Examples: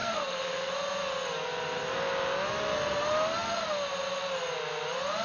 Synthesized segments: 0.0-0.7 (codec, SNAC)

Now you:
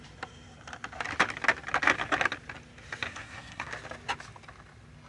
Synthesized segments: 3.1-3.7 (codec, SNAC)

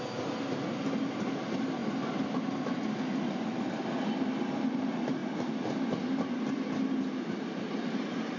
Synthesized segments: none